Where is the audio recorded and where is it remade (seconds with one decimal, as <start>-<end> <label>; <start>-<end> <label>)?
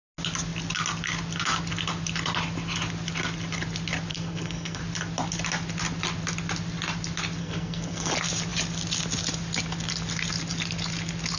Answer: 0.0-4.1 recorded; 4.1-4.8 remade; 4.8-7.4 recorded; 7.4-8.1 remade; 8.1-11.4 recorded